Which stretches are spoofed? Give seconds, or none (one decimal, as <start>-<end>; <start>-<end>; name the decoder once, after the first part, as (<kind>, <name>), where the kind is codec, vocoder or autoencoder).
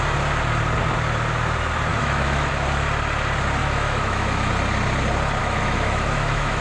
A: 1.9-2.5 (autoencoder, DAC-VAE); 3.6-4.5; 5.4-6.6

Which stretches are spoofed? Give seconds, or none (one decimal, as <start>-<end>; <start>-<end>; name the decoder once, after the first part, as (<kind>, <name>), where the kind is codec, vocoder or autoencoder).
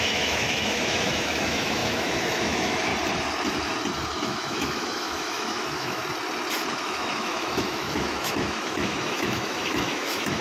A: 0.0-2.9 (autoencoder, DAC-VAE); 4.2-6.0; 6.7-10.4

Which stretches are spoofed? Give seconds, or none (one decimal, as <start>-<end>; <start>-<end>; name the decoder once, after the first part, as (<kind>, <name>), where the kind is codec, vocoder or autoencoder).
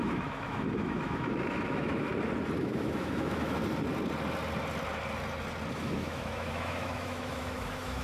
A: 0.0-2.1 (autoencoder, DAC-VAE); 2.6-3.6; 5.7-8.0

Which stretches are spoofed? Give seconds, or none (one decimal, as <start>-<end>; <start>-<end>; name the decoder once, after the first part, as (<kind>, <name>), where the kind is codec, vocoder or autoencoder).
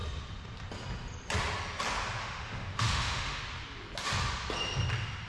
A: 2.2-3.4 (autoencoder, DAC-VAE)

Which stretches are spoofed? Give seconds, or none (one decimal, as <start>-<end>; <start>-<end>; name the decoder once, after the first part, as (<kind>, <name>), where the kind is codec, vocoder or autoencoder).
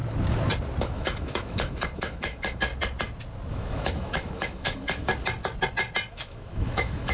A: 0.8-2.7 (autoencoder, DAC-VAE); 3.5-5.1; 6.1-7.1